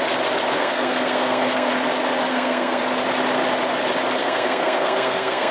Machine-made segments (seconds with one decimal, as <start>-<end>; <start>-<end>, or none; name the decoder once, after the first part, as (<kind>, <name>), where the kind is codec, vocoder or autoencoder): 0.6-1.7 (codec, SNAC); 2.3-2.8; 4.2-5.5